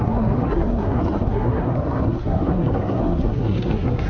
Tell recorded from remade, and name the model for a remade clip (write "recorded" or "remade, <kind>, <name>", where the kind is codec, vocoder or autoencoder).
remade, codec, SNAC